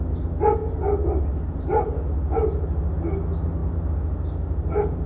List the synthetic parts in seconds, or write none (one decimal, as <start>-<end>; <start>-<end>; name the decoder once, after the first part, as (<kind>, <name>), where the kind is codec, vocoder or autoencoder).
none